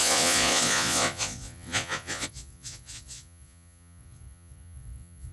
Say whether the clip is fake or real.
fake